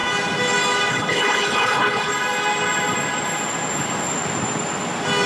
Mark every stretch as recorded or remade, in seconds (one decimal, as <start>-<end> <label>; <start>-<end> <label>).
0.0-0.9 recorded; 0.9-2.1 remade; 2.1-5.3 recorded